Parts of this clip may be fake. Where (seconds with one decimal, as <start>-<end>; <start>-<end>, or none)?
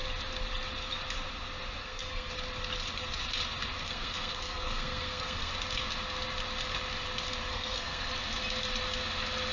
1.8-2.3; 3.8-5.5; 7.5-8.1